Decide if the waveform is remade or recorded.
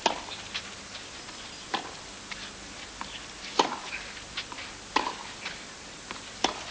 recorded